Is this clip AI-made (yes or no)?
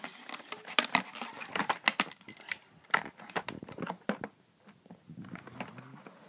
no